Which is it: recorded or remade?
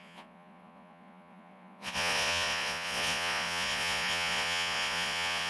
remade